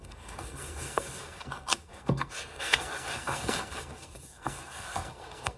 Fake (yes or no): yes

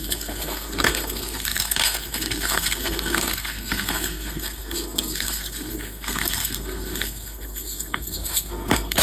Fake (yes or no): yes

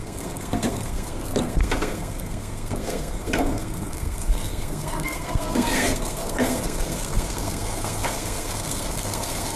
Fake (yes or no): yes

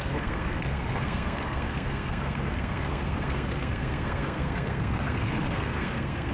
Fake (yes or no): yes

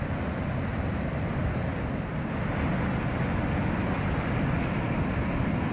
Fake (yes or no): no